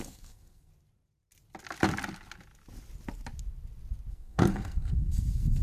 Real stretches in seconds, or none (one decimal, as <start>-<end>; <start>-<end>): 0.7-4.1